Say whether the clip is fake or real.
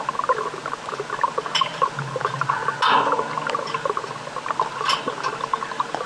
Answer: real